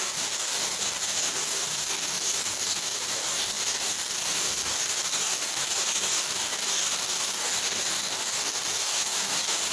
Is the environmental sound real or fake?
fake